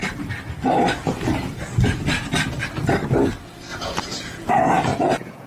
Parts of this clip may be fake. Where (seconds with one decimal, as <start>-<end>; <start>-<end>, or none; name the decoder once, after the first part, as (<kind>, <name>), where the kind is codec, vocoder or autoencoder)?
3.7-4.5 (vocoder, Vocos); 4.9-5.5